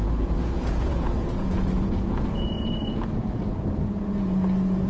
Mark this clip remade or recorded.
remade